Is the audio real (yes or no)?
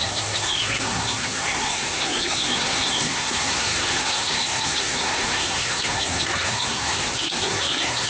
no